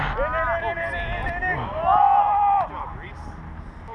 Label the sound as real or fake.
real